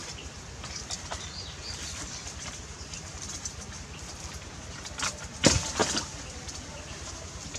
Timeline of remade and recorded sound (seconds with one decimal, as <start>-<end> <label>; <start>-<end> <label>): 0.0-3.3 remade; 3.3-5.8 recorded; 5.8-6.6 remade; 6.6-7.6 recorded